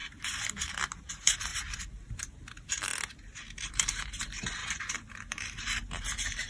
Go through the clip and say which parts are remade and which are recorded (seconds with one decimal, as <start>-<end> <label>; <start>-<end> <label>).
0.0-1.1 recorded; 1.1-2.9 remade; 2.9-3.7 recorded; 3.7-6.5 remade